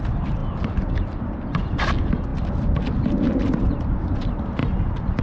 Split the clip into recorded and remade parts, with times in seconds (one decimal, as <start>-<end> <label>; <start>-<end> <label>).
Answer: 0.0-5.2 recorded